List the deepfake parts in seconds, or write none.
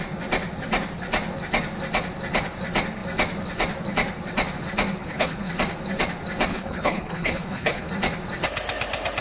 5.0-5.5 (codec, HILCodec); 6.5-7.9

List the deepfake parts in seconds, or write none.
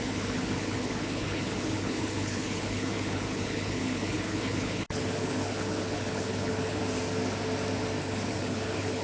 0.0-6.8 (codec, HILCodec); 8.0-9.0